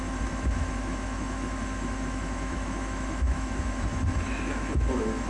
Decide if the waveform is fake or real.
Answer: fake